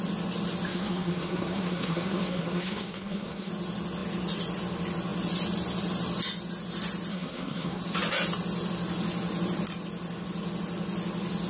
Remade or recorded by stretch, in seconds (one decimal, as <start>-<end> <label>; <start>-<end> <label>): 0.0-0.7 recorded; 0.7-3.5 remade; 3.5-7.1 recorded; 7.1-7.8 remade; 7.8-11.5 recorded